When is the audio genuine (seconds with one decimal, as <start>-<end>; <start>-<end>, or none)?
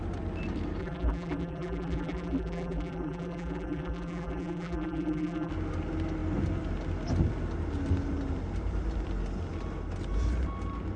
0.0-0.8; 5.5-11.0